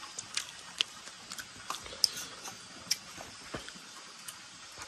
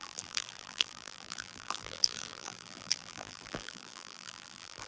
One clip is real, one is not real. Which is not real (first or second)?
second